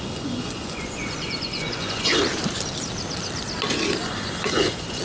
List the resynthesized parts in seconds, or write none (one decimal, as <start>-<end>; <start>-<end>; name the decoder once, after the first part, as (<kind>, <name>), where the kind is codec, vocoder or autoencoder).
0.0-2.2 (vocoder, Vocos); 4.0-5.0